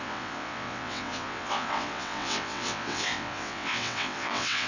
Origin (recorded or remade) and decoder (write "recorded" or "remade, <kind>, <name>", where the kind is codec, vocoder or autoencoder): remade, vocoder, WaveNeXt